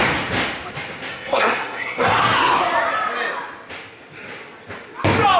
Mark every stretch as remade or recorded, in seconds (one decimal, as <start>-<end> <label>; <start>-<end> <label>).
0.0-1.1 recorded; 1.1-2.6 remade; 2.6-5.4 recorded